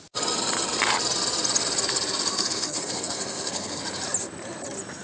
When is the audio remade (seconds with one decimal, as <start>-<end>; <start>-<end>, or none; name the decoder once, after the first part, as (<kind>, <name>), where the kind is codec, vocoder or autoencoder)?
2.3-3.8 (codec, SNAC)